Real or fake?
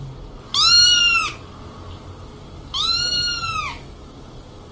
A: real